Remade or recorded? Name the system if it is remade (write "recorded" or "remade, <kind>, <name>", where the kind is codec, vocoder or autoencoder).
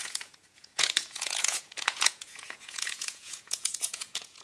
remade, vocoder, Vocos